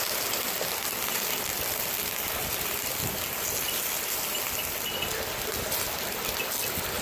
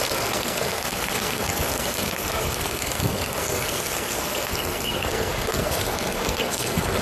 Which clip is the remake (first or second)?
second